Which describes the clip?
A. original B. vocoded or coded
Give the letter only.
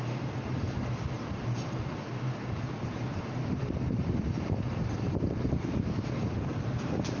B